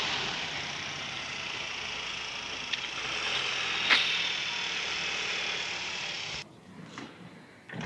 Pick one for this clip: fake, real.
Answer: real